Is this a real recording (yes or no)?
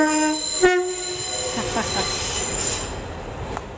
yes